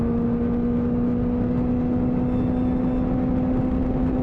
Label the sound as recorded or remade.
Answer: recorded